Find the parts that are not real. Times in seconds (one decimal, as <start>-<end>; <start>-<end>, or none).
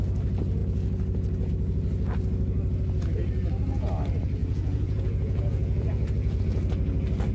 0.6-1.5; 4.4-6.4